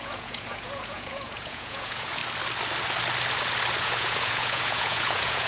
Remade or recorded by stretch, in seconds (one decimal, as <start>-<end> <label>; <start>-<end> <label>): 0.0-2.2 remade; 2.2-3.8 recorded; 3.8-5.5 remade